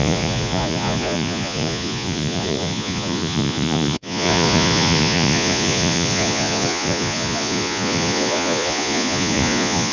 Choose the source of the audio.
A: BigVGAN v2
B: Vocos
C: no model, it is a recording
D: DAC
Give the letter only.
B